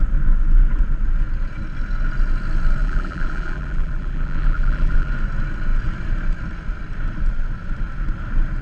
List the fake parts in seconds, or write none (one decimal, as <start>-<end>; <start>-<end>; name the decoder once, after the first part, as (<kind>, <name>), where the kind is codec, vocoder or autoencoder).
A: 2.8-5.1 (vocoder, BigVGAN v2)